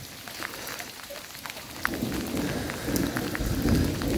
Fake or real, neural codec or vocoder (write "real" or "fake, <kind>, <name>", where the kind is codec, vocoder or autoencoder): real